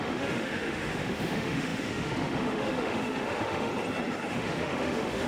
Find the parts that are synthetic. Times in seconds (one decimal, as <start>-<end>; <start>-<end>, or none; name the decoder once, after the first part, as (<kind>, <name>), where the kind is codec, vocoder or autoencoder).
0.0-3.7 (autoencoder, DAC-VAE); 4.3-5.3